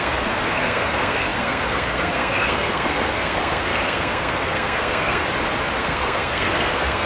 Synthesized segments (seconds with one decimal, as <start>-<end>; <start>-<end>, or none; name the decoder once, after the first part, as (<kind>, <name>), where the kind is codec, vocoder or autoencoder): 0.0-5.2 (codec, SNAC); 5.8-7.1